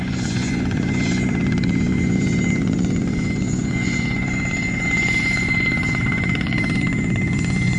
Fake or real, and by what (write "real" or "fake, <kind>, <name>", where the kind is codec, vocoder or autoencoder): fake, vocoder, Vocos